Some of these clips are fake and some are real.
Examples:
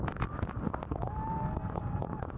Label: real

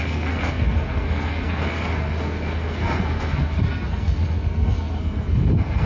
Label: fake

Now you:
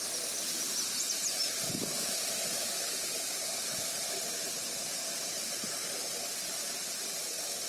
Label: real